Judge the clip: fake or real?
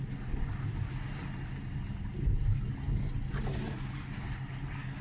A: real